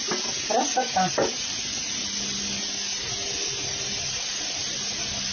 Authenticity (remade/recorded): recorded